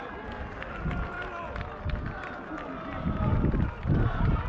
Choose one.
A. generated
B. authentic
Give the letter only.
B